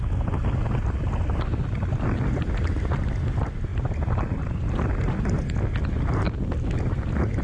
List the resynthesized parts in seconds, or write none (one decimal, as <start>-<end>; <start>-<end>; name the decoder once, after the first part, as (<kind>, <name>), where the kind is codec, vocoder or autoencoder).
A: none